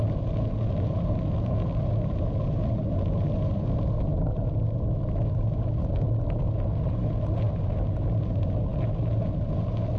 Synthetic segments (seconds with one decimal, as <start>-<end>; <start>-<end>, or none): none